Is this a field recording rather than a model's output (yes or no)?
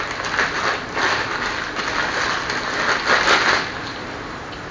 yes